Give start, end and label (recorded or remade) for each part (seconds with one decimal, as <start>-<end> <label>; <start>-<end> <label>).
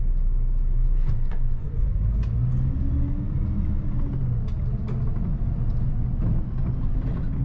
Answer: 0.0-0.8 recorded; 0.8-2.1 remade; 2.1-7.4 recorded